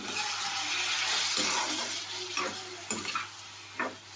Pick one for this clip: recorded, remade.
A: recorded